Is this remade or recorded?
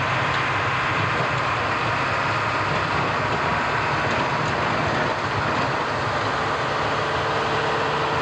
recorded